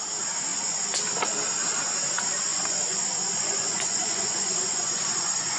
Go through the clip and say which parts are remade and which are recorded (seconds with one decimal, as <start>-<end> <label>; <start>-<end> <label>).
0.0-0.5 recorded; 0.5-1.0 remade; 1.0-2.5 recorded; 2.5-5.6 remade